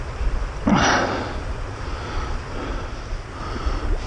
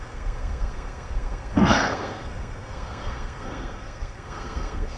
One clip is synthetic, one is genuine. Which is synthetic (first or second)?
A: second